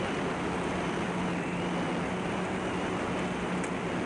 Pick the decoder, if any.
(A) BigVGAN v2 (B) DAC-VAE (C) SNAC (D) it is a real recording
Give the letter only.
D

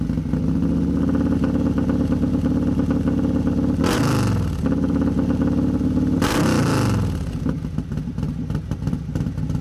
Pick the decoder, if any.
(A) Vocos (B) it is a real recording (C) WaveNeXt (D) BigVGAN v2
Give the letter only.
B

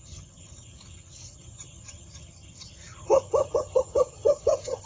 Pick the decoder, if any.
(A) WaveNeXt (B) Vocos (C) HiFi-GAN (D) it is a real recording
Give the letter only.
C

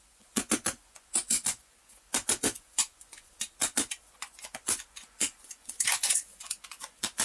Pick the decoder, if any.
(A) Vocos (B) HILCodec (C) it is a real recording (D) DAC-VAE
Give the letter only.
A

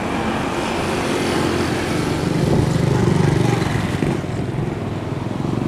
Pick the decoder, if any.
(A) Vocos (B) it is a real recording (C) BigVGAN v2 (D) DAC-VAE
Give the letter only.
B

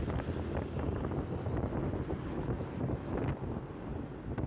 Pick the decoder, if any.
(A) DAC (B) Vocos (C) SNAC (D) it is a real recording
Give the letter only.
D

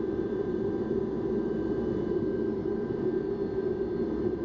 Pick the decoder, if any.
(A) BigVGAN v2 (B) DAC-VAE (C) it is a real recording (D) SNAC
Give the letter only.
C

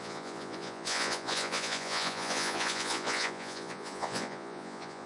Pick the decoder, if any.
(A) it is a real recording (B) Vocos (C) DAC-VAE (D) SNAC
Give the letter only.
B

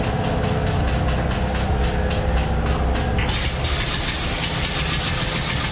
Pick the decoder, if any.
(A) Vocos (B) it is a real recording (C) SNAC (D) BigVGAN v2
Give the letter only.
B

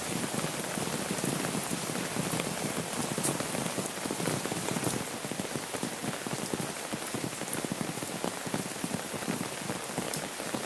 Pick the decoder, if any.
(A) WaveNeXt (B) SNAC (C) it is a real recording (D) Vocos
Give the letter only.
C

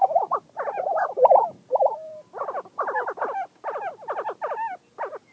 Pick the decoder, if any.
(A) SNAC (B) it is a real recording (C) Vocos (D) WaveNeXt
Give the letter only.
B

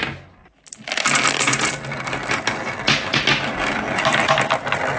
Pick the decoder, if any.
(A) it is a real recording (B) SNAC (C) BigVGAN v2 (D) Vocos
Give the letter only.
A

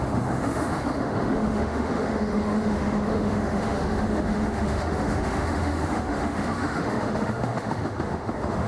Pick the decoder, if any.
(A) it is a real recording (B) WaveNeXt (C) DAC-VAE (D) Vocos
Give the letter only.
C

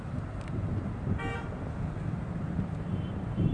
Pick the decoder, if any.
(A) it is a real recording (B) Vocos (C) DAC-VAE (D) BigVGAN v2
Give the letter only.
D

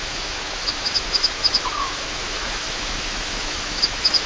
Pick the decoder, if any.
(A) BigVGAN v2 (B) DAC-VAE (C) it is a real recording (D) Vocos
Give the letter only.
B